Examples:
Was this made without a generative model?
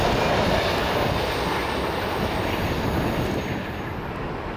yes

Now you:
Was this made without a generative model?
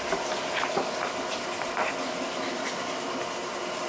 yes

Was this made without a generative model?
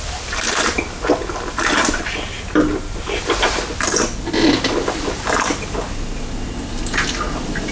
yes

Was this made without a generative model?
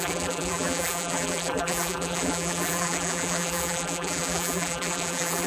no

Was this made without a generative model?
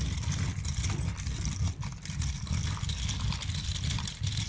no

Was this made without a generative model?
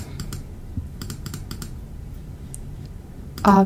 no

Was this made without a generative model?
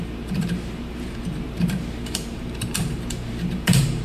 no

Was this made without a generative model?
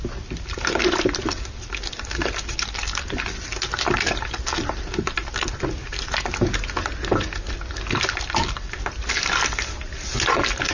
yes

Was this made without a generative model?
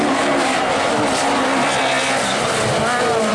yes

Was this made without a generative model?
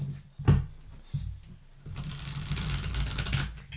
yes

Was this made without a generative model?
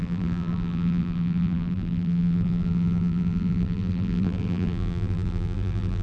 no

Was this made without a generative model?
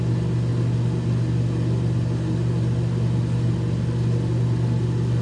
yes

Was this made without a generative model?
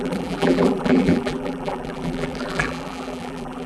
no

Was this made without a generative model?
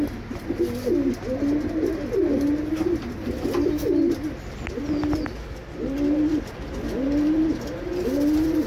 yes